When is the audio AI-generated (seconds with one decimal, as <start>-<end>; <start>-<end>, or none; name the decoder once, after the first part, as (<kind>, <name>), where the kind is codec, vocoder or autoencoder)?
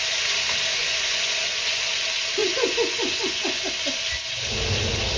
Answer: 0.8-1.9 (vocoder, Vocos); 2.4-3.7